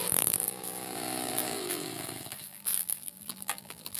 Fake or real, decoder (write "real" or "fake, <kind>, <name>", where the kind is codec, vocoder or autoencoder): fake, vocoder, BigVGAN v2